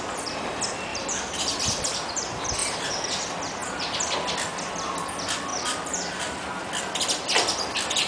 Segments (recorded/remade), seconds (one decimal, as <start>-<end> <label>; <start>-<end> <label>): 0.0-0.9 recorded; 0.9-2.2 remade; 2.2-2.6 recorded; 2.6-3.2 remade; 3.2-5.5 recorded; 5.5-6.2 remade; 6.2-8.1 recorded